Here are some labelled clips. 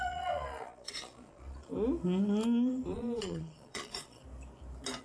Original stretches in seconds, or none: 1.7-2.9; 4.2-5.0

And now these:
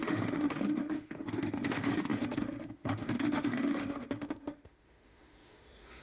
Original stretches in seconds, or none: none

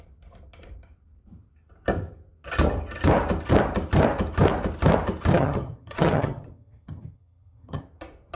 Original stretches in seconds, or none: 0.0-5.3; 7.8-8.4

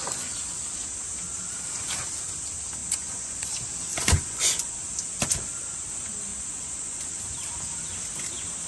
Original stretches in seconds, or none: 0.0-2.8; 3.5-3.9; 4.7-6.3; 7.2-8.7

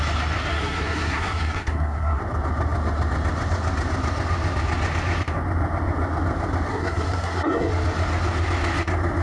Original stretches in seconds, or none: 0.0-0.5; 2.2-6.7; 7.7-9.2

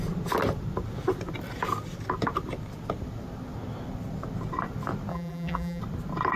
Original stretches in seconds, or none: 0.0-5.1; 5.8-6.4